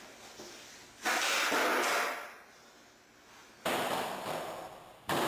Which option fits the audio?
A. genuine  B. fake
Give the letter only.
A